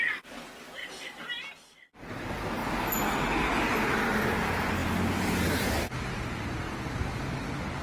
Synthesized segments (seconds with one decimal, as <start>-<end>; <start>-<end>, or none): 0.0-0.8; 1.5-2.6; 3.4-7.8